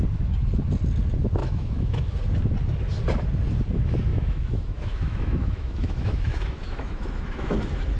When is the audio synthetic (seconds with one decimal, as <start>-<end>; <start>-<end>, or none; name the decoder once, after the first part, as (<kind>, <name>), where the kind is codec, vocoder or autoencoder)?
1.4-2.0 (autoencoder, DAC-VAE); 4.1-7.5